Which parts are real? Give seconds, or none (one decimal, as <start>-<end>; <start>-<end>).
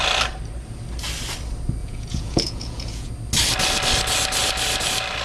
0.0-1.8; 3.1-5.2